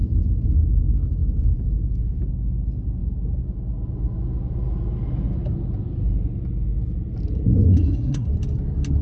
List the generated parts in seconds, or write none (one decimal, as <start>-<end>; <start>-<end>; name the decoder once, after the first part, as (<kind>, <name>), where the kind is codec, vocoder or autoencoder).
7.7-8.3 (codec, SNAC)